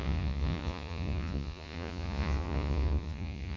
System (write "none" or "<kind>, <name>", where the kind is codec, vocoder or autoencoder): vocoder, Vocos